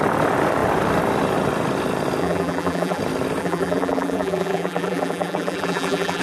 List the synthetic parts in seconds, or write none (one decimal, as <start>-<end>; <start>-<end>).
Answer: 2.2-3.0; 3.4-6.2